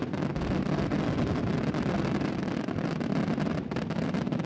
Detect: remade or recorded recorded